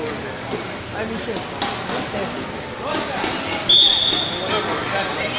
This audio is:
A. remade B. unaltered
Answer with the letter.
B